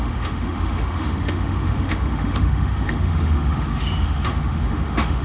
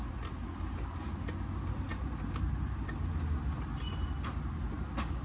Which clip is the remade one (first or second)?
first